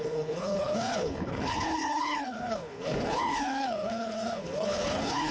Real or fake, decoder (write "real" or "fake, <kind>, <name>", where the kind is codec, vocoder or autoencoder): fake, codec, HILCodec